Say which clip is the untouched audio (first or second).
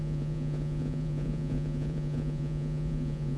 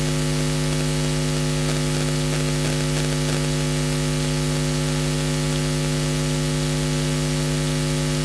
second